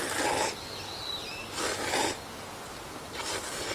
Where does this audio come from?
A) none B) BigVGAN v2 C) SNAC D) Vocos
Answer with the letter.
B